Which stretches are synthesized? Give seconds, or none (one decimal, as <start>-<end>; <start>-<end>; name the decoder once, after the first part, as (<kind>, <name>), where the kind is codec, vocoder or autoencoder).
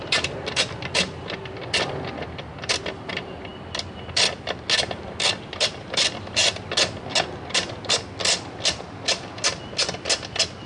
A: 0.0-2.5 (vocoder, BigVGAN v2); 3.1-3.5; 5.3-6.4